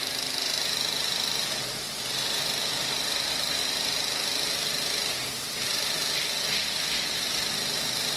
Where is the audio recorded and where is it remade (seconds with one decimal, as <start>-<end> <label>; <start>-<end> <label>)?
0.0-8.2 recorded